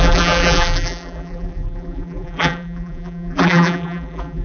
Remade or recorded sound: remade